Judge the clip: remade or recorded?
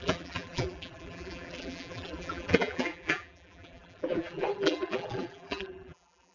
remade